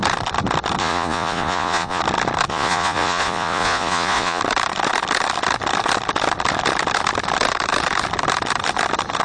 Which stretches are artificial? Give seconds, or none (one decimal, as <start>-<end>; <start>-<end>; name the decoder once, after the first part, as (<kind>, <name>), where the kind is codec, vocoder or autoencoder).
0.8-2.0 (vocoder, Vocos); 2.5-4.4